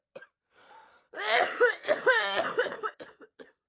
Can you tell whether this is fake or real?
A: fake